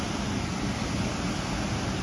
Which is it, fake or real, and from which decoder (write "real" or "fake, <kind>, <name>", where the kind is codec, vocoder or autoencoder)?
real